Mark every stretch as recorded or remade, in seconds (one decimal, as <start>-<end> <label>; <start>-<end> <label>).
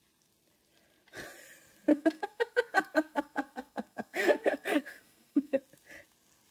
0.0-1.9 recorded; 1.9-5.6 remade; 5.6-6.5 recorded